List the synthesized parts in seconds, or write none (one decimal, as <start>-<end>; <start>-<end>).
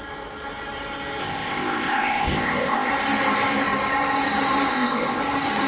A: 1.2-2.9; 4.7-5.2